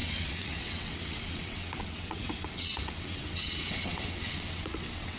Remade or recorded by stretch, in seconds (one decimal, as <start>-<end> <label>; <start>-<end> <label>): 0.0-5.2 remade